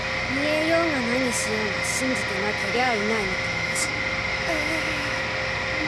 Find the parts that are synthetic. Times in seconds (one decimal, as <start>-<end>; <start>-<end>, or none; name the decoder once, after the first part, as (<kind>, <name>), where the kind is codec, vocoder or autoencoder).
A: 2.6-3.9 (autoencoder, DAC-VAE); 4.3-5.2